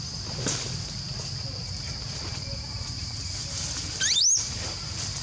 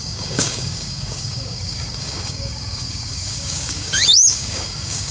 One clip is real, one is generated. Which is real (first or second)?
first